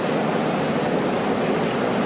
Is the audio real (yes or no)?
yes